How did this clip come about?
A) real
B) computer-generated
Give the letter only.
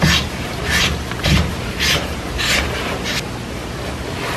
A